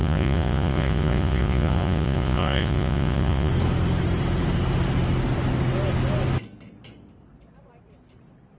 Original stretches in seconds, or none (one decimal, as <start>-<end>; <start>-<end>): 3.5-8.6